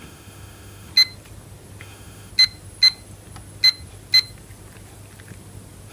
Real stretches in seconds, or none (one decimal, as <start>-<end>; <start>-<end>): 0.9-1.8; 2.3-5.9